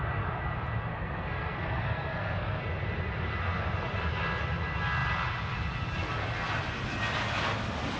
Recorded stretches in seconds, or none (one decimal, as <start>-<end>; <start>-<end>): 0.0-0.9; 2.6-8.0